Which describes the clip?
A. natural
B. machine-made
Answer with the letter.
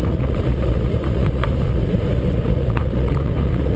B